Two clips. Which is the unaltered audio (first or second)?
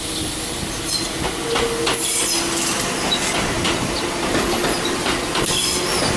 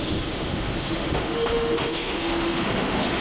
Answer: first